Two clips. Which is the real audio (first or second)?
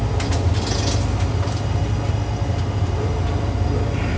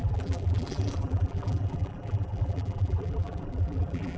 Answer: first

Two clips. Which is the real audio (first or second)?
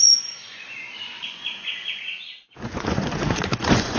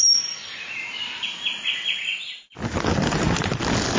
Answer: second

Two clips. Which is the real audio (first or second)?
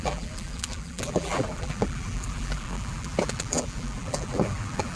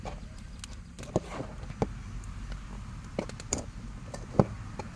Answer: second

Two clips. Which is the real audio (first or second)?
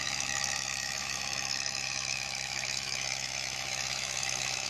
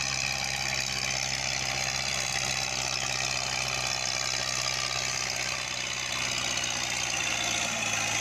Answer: second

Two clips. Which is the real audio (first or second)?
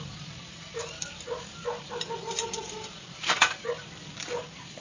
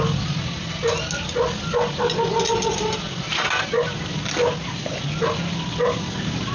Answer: second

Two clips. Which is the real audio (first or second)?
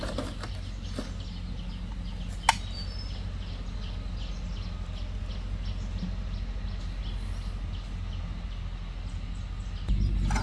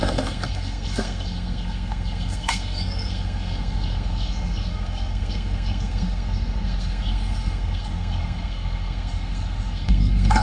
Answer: first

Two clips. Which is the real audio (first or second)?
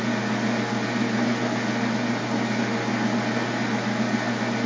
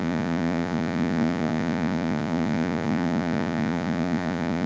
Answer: first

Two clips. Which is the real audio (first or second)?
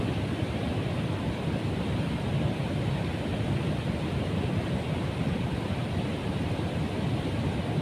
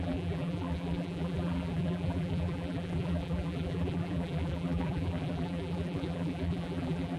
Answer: first